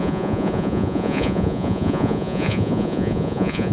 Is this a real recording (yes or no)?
no